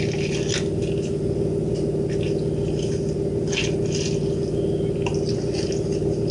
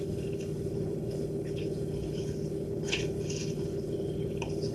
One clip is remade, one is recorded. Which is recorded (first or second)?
first